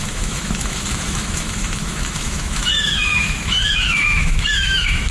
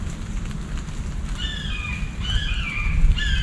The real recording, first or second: second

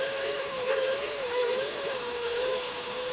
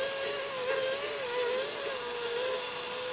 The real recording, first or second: second